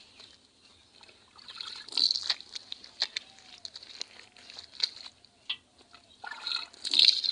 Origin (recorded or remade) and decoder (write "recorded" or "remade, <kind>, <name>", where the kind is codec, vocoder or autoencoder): recorded